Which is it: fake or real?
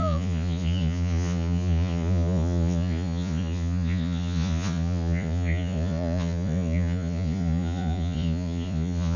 fake